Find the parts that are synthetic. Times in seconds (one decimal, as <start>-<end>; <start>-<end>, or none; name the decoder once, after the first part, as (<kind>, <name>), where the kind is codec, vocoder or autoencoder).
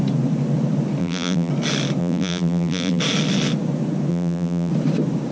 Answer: 1.0-1.5 (vocoder, BigVGAN v2); 2.0-3.0; 4.1-4.7